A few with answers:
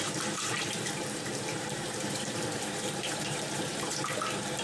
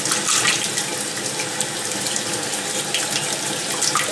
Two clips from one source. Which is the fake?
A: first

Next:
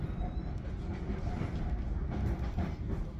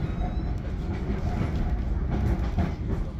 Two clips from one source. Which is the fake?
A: first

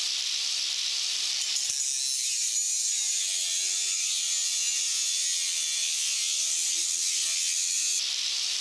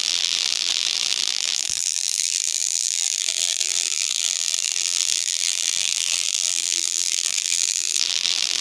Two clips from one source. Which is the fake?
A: second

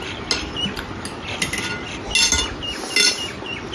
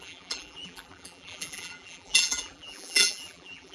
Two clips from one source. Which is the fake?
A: second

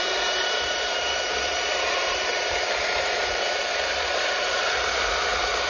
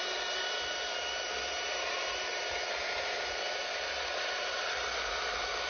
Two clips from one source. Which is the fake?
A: first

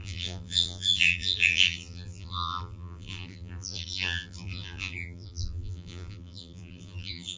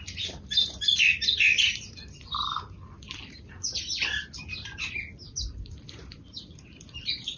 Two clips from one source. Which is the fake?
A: first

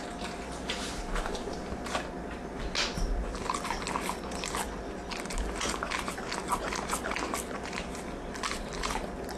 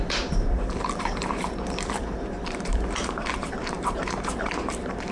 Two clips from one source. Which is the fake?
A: second